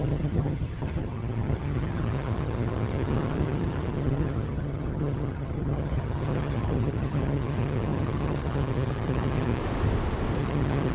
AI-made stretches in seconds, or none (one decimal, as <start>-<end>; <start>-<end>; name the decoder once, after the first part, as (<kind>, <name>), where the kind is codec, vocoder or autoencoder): 0.0-9.6 (vocoder, HiFi-GAN); 10.4-10.9